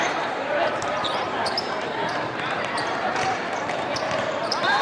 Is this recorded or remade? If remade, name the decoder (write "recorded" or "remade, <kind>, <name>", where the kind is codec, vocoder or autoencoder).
remade, vocoder, BigVGAN v2